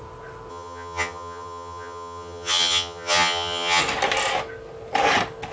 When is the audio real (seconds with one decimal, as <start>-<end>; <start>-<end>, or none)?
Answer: 0.0-0.5; 3.8-5.5

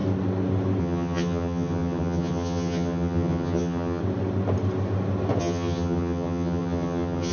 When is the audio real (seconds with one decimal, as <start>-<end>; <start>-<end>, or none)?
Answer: 0.0-0.8; 4.0-5.4

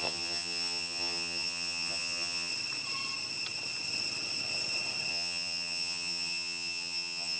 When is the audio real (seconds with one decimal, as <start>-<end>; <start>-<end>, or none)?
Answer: 2.5-5.1